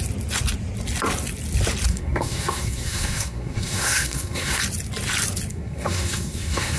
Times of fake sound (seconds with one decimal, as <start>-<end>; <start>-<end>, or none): 1.9-4.6; 5.5-6.8